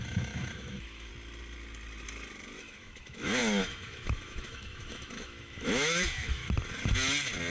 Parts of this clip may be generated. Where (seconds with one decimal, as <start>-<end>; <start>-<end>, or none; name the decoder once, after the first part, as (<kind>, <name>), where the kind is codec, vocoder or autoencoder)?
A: 0.0-1.1 (autoencoder, DAC-VAE); 2.6-6.4